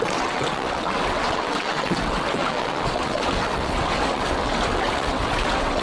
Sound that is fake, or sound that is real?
fake